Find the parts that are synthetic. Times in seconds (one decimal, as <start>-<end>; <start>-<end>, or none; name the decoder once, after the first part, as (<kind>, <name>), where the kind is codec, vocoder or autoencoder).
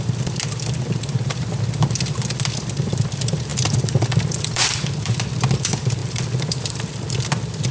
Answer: 0.0-7.7 (vocoder, BigVGAN v2)